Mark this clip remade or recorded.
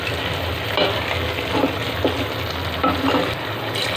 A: recorded